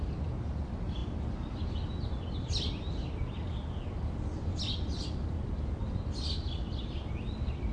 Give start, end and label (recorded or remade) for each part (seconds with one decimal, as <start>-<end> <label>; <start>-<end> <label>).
0.0-7.7 recorded